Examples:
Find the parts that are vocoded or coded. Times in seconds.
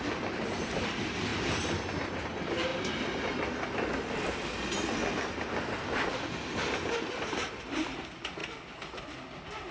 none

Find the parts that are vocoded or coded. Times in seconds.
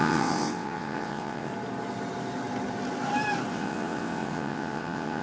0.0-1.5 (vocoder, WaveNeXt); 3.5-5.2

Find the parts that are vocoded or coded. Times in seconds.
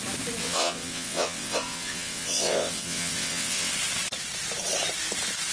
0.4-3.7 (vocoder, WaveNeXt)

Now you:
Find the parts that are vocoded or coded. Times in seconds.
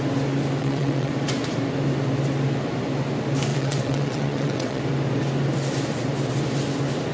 0.6-1.1 (vocoder, WaveNeXt); 3.5-4.8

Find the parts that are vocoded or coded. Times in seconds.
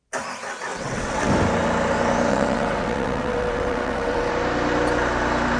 0.7-1.3 (vocoder, WaveNeXt); 2.3-4.3